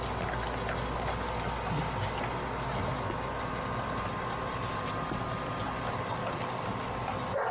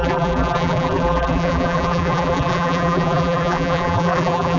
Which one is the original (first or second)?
first